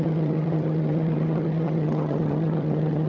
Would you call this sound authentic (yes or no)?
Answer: no